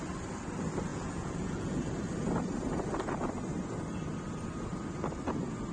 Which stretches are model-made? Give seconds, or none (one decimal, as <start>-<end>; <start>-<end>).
0.9-1.8